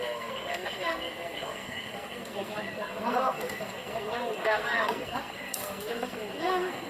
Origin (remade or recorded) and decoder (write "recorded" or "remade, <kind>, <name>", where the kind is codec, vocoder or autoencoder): remade, codec, SNAC